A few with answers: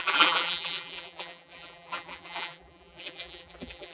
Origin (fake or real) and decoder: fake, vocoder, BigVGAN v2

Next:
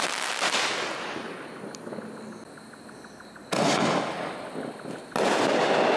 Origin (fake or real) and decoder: real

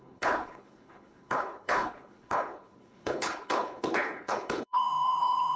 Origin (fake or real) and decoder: fake, codec, HILCodec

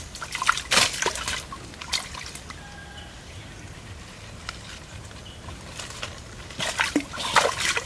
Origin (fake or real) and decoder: real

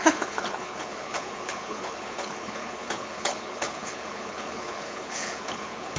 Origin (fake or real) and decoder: fake, codec, HILCodec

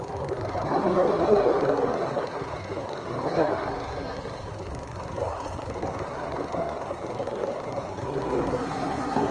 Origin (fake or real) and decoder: fake, codec, SNAC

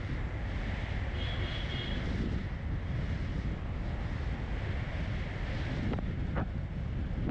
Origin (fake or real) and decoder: real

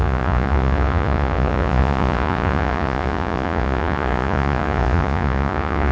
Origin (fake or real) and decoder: fake, vocoder, Vocos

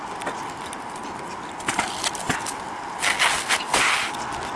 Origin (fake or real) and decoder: real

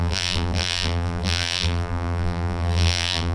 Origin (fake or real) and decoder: fake, vocoder, BigVGAN v2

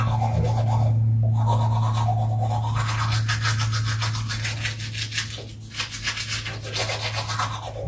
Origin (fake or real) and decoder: real